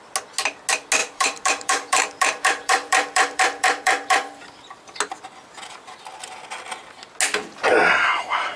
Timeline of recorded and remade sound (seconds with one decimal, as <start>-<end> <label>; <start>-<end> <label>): 0.0-1.0 recorded; 1.0-4.4 remade; 4.4-8.6 recorded